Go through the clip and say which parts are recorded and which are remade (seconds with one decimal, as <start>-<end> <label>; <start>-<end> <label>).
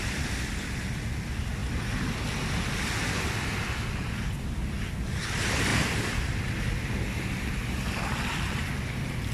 0.0-9.3 recorded